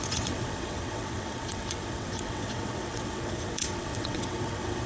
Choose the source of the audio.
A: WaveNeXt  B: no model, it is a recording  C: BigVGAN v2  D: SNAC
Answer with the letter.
A